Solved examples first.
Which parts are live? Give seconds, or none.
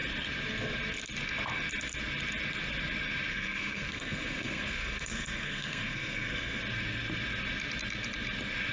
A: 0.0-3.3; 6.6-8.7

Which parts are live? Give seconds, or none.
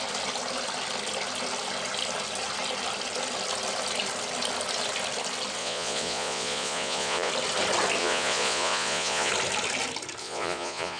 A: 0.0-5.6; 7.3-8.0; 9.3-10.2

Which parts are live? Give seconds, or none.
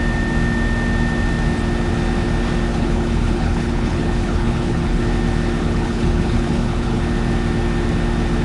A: 0.0-2.7; 5.0-5.6; 7.0-8.4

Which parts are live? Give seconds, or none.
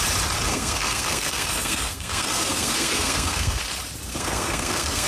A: 0.0-0.5; 3.6-4.1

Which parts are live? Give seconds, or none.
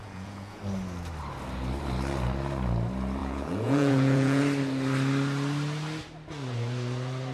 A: 0.6-3.2; 4.4-7.3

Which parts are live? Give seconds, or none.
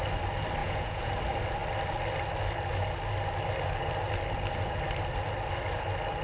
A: 0.0-0.6; 1.1-6.2